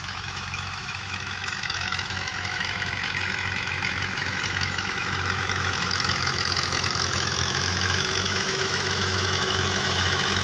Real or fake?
fake